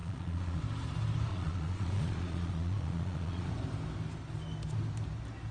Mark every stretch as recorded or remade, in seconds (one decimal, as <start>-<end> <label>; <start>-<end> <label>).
0.0-0.6 remade; 0.6-1.3 recorded; 1.3-3.5 remade; 3.5-5.5 recorded